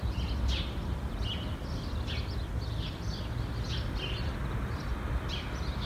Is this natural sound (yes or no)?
yes